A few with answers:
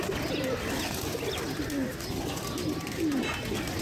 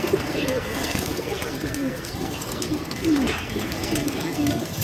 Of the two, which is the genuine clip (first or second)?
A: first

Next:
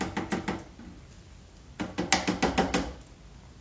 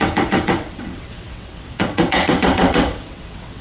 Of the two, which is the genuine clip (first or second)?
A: first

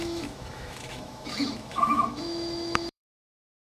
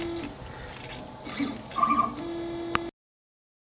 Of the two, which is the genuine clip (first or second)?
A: second